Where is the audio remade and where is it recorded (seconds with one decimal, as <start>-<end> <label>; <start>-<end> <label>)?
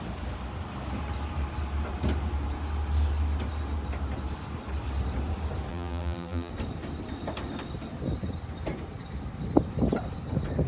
0.0-5.7 recorded; 5.7-6.5 remade; 6.5-10.7 recorded